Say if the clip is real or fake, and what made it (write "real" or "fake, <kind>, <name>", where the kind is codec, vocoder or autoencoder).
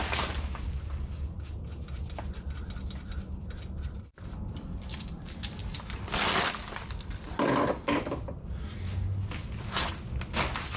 real